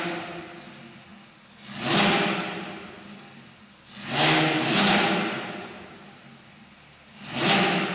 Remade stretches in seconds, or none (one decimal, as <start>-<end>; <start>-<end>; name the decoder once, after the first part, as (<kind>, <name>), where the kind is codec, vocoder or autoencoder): none